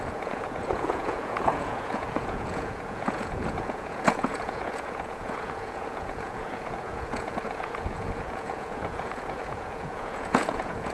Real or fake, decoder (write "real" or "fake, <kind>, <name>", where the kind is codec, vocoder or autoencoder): fake, vocoder, Vocos